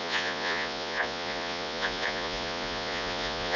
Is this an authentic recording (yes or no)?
no